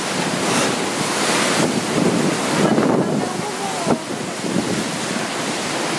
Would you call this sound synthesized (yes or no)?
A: no